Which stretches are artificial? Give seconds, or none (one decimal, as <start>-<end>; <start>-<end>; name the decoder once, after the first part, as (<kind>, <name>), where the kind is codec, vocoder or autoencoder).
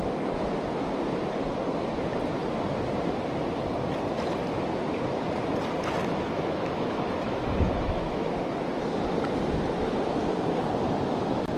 6.0-8.4 (autoencoder, DAC-VAE)